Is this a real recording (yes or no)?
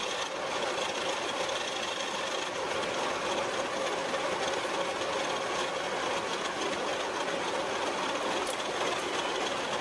yes